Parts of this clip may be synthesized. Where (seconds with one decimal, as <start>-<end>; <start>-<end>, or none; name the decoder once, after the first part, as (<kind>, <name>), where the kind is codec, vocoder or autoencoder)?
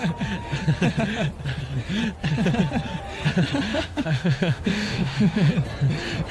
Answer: 3.7-5.5 (autoencoder, DAC-VAE)